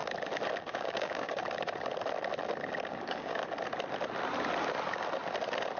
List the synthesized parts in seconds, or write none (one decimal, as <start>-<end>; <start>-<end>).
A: 0.6-1.4; 2.9-3.4